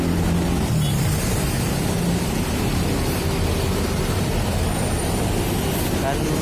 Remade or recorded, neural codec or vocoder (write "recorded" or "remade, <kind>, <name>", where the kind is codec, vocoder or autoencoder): recorded